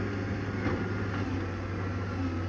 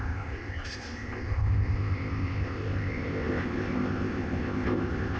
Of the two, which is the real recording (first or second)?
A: first